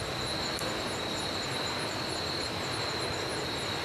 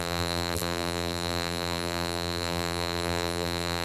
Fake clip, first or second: second